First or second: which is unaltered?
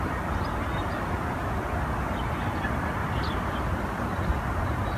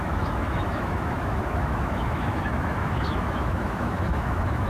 first